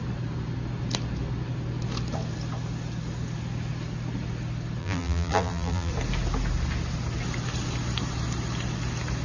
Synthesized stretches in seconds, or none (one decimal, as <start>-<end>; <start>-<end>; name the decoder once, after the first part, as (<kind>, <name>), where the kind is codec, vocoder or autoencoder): 4.8-5.9 (vocoder, BigVGAN v2)